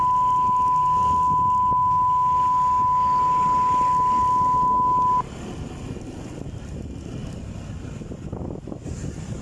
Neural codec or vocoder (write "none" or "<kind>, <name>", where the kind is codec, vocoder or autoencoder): none